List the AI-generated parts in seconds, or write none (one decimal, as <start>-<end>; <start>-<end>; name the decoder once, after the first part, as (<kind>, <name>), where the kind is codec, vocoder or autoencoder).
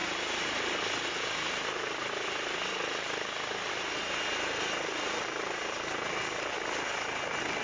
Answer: none